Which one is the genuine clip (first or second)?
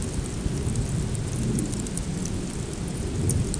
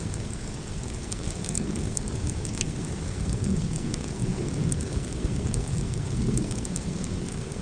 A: first